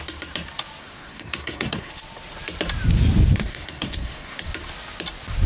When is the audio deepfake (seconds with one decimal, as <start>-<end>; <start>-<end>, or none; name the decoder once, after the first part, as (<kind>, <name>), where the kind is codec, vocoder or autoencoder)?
0.8-1.9 (codec, SNAC); 3.4-4.4